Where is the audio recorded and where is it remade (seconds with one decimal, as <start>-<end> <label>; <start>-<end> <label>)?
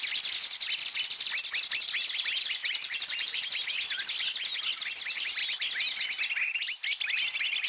0.0-2.6 recorded; 2.6-3.4 remade; 3.4-7.7 recorded